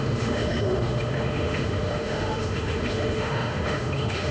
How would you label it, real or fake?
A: fake